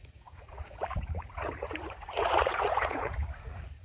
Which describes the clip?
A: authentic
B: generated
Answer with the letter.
B